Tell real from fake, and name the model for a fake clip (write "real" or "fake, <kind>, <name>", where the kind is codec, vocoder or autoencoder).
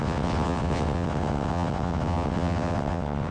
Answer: fake, vocoder, WaveNeXt